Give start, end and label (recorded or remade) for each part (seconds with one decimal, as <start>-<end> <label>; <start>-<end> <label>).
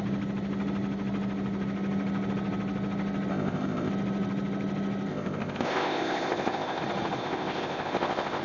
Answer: 0.0-3.3 recorded; 3.3-3.9 remade; 3.9-5.1 recorded; 5.1-6.8 remade; 6.8-7.2 recorded; 7.2-8.4 remade